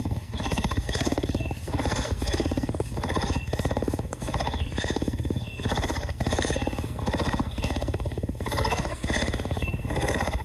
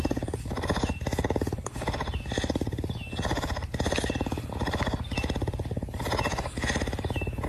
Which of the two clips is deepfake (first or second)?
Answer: first